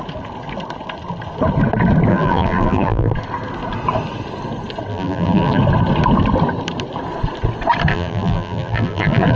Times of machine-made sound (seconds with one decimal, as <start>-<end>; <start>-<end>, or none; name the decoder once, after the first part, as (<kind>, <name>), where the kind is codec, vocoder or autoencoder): 2.1-3.1 (vocoder, BigVGAN v2); 4.9-5.6; 7.9-9.4